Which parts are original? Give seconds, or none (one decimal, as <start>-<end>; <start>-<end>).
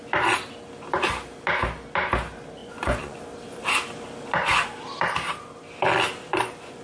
0.0-2.6; 3.2-6.2